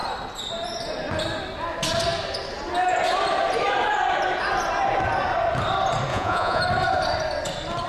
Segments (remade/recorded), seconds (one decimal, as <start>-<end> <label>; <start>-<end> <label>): 0.0-6.1 recorded; 6.1-6.6 remade; 6.6-7.9 recorded